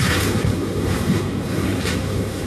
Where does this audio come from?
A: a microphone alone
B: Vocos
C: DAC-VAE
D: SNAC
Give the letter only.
D